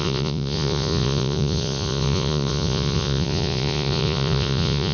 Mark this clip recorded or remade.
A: remade